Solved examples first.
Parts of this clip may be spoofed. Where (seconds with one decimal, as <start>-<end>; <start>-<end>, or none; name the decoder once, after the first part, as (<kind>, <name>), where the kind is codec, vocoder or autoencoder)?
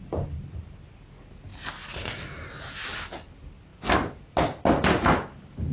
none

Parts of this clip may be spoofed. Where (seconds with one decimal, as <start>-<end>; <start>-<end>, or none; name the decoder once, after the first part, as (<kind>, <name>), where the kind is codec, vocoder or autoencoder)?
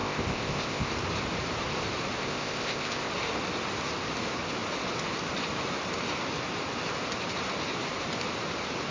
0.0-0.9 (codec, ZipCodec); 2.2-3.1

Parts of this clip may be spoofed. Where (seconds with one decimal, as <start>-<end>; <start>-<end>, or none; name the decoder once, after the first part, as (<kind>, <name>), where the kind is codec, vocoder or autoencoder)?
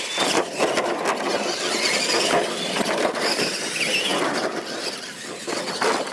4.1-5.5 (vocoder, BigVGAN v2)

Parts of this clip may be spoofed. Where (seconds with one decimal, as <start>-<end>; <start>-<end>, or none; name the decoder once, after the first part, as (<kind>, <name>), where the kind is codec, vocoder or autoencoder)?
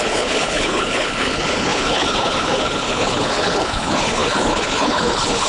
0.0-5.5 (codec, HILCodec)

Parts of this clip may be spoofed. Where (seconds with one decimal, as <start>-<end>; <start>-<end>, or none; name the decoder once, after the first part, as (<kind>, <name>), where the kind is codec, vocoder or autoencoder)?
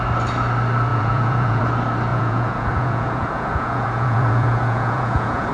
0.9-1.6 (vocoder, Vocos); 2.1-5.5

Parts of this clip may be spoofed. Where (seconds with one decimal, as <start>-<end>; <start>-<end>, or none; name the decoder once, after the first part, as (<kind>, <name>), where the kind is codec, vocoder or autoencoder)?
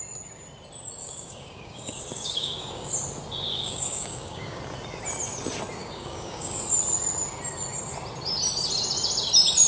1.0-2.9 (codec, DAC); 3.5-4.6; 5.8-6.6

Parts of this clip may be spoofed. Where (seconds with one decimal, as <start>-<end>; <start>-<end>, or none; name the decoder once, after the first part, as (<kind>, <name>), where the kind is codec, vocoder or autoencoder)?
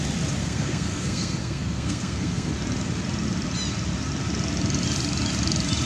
0.4-2.5 (codec, SNAC)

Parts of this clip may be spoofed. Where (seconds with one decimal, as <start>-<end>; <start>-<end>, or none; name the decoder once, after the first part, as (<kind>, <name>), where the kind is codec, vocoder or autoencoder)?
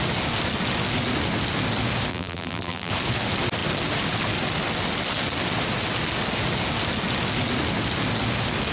2.1-2.9 (vocoder, BigVGAN v2)